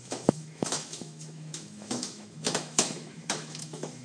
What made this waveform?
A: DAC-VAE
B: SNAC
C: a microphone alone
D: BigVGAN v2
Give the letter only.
A